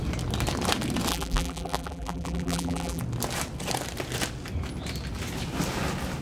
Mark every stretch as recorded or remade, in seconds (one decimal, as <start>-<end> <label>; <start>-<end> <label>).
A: 0.0-1.1 recorded; 1.1-3.0 remade; 3.0-6.2 recorded